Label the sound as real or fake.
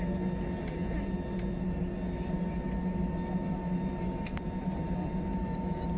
real